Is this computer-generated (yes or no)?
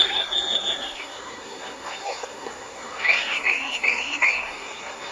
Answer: yes